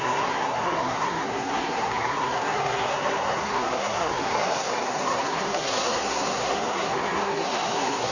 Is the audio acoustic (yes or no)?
no